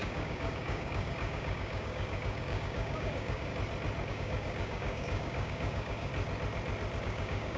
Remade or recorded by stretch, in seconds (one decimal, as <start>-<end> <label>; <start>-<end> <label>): 0.0-3.5 remade; 3.5-4.1 recorded; 4.1-6.1 remade; 6.1-7.0 recorded; 7.0-7.6 remade